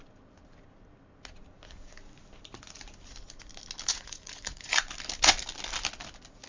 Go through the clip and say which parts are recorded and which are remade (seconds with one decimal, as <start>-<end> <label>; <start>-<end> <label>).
0.0-3.9 recorded; 3.9-4.7 remade; 4.7-6.5 recorded